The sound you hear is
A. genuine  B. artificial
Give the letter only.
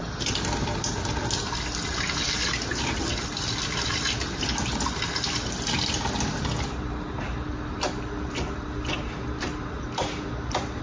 A